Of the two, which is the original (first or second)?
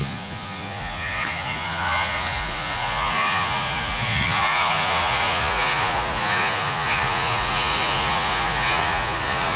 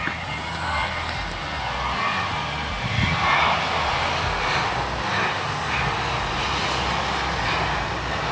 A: second